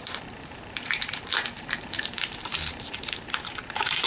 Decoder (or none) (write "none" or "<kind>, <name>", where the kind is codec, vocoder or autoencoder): vocoder, BigVGAN v2